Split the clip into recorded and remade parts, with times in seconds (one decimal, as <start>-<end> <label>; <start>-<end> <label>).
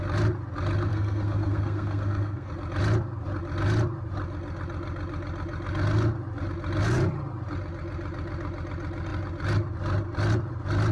0.0-0.9 recorded; 0.9-2.5 remade; 2.5-10.9 recorded